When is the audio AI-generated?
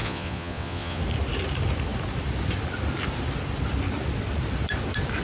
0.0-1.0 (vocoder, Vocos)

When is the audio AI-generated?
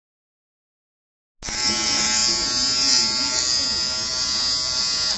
none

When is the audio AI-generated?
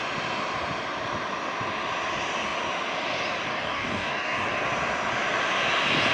3.5-4.5 (codec, DAC)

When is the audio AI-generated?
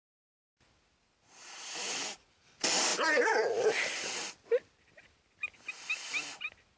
none